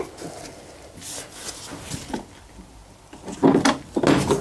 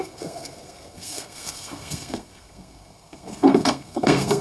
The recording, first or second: first